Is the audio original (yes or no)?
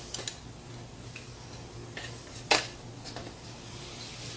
yes